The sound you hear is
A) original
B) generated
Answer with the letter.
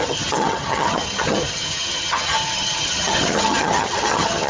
B